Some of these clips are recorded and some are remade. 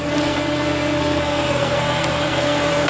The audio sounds remade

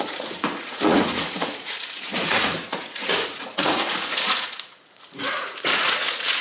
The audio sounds remade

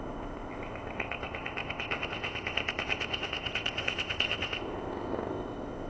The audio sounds remade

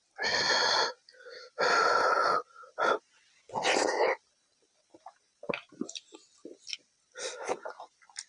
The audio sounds recorded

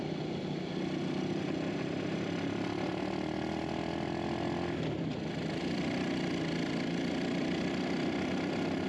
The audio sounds recorded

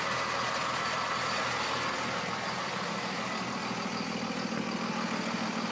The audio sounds recorded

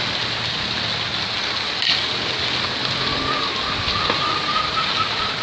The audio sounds recorded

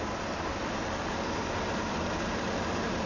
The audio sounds remade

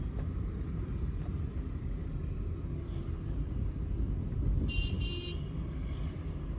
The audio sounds recorded